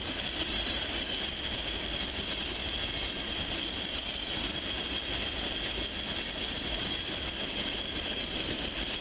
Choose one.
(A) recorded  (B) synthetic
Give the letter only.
A